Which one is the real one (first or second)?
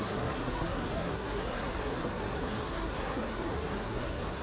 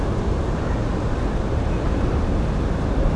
second